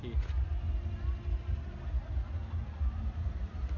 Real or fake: real